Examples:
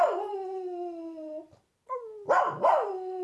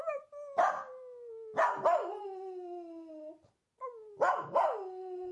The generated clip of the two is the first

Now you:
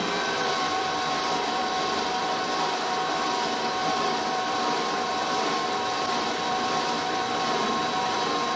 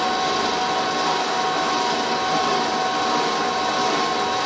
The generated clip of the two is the first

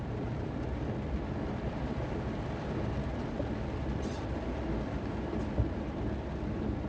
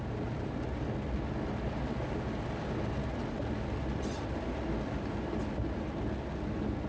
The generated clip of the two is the first